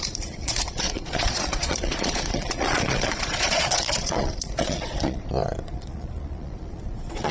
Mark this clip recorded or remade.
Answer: remade